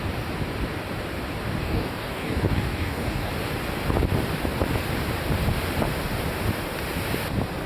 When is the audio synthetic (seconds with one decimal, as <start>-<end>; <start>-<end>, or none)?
1.6-3.3